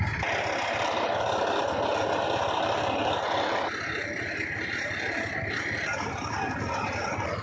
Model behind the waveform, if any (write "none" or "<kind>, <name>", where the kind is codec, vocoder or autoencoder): vocoder, BigVGAN v2